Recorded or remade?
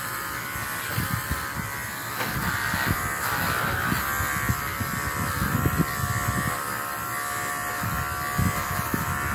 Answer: recorded